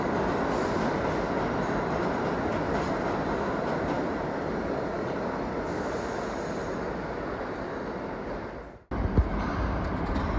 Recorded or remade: recorded